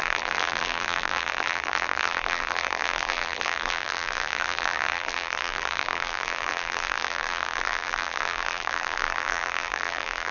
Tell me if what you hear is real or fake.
fake